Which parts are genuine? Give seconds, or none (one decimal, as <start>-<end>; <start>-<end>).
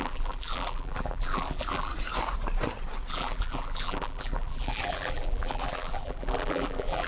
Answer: 1.9-3.1